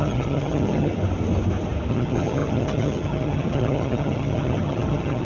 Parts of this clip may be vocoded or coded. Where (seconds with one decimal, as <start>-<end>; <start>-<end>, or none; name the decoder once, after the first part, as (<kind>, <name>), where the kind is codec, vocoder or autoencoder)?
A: 0.0-0.9 (vocoder, HiFi-GAN); 1.9-5.2

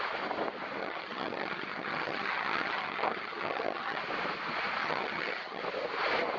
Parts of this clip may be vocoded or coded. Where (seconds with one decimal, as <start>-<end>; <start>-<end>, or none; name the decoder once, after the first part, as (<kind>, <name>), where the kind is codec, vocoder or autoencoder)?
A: 0.8-4.0 (vocoder, HiFi-GAN); 4.8-5.6